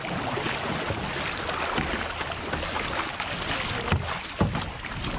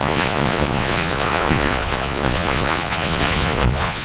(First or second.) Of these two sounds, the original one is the first